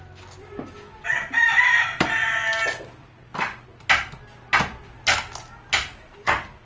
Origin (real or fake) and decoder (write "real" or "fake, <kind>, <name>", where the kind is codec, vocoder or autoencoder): real